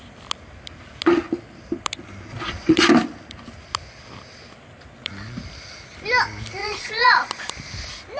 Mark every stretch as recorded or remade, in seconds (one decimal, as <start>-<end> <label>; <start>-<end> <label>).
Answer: 0.0-2.3 recorded; 2.3-2.9 remade; 2.9-6.6 recorded; 6.6-7.5 remade; 7.5-8.2 recorded